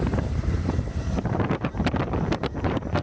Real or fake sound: fake